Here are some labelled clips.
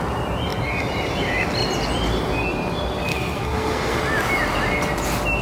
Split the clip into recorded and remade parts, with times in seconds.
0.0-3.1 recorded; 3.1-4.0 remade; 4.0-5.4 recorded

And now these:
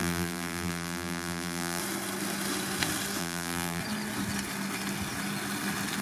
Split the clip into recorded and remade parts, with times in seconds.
0.0-1.8 remade; 1.8-3.2 recorded; 3.2-3.8 remade; 3.8-6.0 recorded

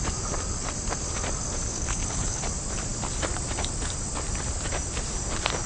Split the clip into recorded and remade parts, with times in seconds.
0.0-1.7 recorded; 1.7-2.4 remade; 2.4-5.7 recorded

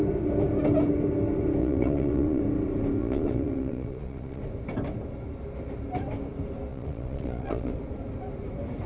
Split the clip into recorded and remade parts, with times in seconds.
0.0-1.6 recorded; 1.6-2.4 remade; 2.4-3.0 recorded; 3.0-4.4 remade; 4.4-6.7 recorded; 6.7-7.7 remade; 7.7-8.9 recorded

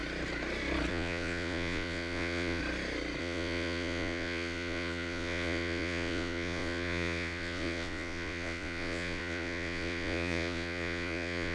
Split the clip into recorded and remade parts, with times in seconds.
0.0-0.9 recorded; 0.9-2.6 remade; 2.6-3.2 recorded; 3.2-11.5 remade

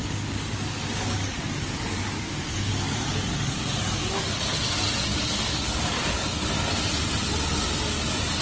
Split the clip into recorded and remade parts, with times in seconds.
0.0-4.4 remade; 4.4-5.1 recorded; 5.1-6.5 remade; 6.5-8.4 recorded

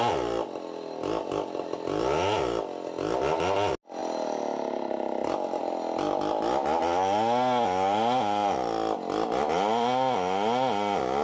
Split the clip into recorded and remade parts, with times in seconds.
0.0-11.2 recorded

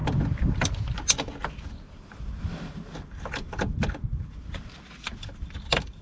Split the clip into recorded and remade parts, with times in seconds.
0.0-6.0 recorded